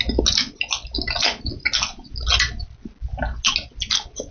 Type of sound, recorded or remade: recorded